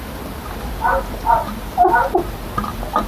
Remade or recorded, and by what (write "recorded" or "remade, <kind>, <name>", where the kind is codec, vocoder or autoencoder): recorded